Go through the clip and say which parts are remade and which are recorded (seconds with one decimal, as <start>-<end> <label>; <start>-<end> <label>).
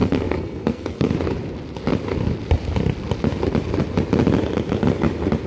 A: 0.0-1.1 remade; 1.1-5.5 recorded